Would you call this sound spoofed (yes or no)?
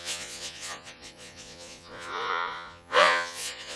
yes